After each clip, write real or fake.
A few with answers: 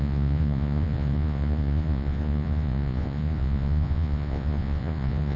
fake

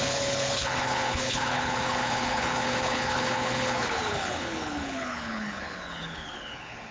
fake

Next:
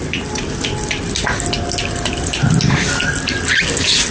real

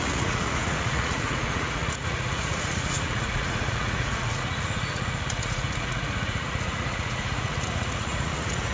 fake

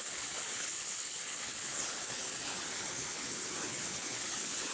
fake